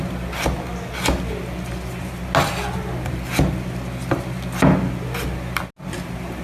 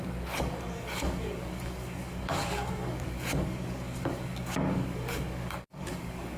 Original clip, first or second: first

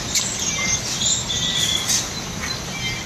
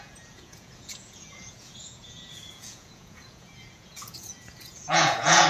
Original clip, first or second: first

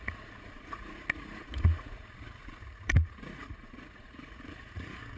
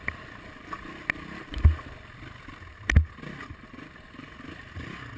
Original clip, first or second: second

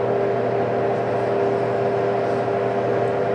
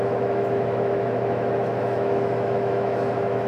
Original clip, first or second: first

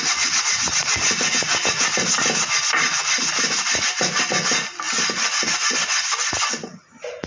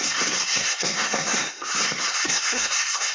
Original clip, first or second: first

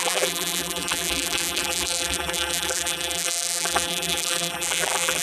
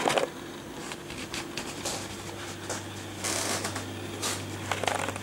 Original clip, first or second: second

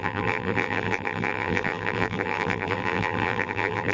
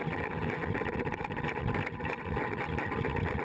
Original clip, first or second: second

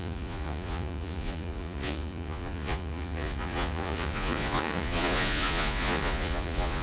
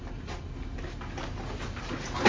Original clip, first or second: second